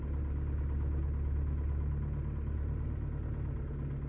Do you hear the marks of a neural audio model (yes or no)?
no